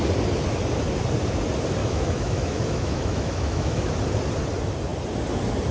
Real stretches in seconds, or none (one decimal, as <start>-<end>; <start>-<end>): 0.0-1.8; 3.9-5.7